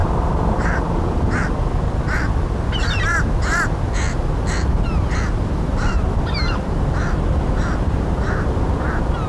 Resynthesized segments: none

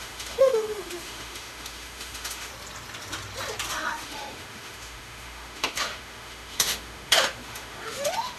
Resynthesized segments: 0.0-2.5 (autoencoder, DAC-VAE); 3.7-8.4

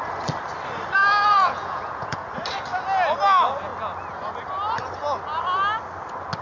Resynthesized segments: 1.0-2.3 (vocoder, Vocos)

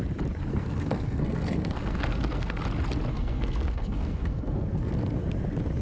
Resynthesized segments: 0.5-2.6 (codec, SNAC); 3.1-4.9